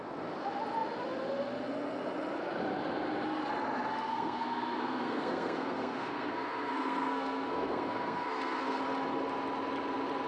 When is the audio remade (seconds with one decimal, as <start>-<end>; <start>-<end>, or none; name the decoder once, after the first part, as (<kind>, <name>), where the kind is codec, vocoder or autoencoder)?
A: 4.1-8.8 (codec, SNAC)